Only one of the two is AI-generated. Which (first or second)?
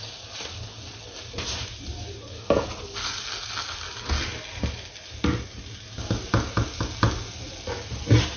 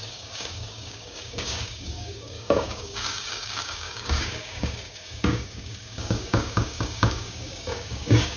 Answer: second